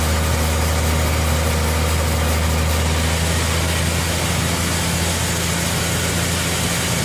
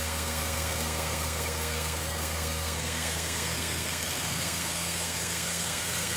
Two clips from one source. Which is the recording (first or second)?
first